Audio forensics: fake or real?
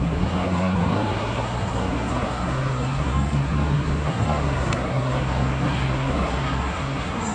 fake